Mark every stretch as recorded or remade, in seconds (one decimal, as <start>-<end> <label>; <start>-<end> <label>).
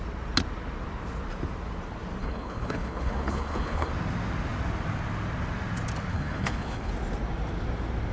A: 0.0-2.2 recorded; 2.2-3.9 remade; 3.9-6.1 recorded; 6.1-6.9 remade; 6.9-8.1 recorded